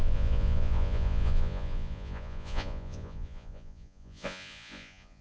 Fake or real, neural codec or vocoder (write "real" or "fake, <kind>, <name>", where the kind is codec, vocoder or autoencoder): fake, vocoder, Vocos